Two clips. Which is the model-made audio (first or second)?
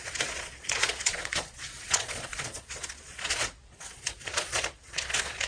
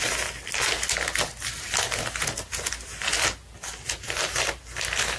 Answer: first